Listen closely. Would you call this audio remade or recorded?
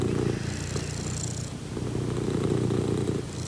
recorded